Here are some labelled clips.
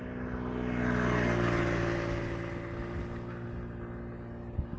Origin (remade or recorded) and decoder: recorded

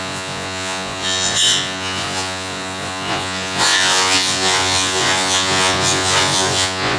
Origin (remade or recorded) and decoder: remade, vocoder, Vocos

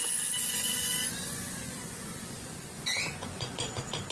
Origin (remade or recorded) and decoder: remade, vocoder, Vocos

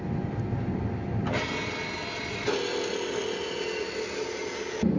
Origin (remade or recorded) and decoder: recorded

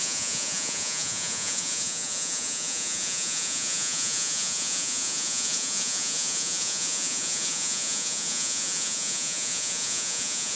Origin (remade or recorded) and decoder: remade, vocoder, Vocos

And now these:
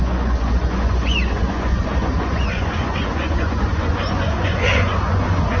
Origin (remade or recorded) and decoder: remade, vocoder, Vocos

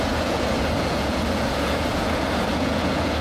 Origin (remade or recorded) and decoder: remade, vocoder, Vocos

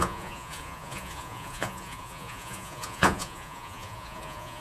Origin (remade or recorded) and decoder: remade, vocoder, Vocos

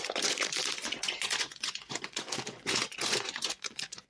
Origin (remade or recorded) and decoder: remade, vocoder, Vocos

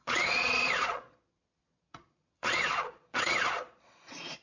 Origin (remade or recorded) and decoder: remade, vocoder, Vocos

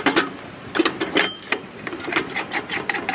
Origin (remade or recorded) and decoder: recorded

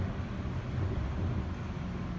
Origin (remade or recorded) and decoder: recorded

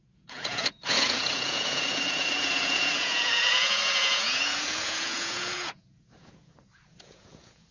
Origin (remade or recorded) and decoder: remade, vocoder, Vocos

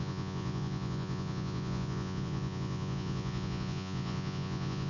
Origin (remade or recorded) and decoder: remade, vocoder, Vocos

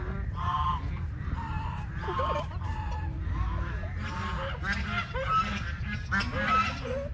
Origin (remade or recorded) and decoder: recorded